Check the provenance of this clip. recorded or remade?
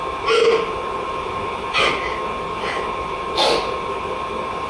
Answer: recorded